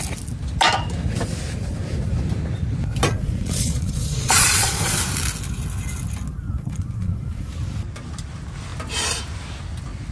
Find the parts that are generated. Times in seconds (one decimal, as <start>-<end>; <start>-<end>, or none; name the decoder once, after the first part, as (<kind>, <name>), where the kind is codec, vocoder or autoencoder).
3.1-5.0 (vocoder, Vocos); 6.3-7.5